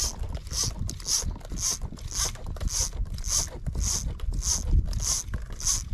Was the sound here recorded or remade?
recorded